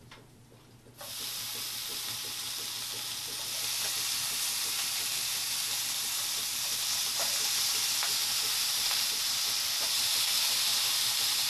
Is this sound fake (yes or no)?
no